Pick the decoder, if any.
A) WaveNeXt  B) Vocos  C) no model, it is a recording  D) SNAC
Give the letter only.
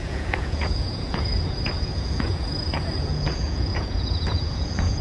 B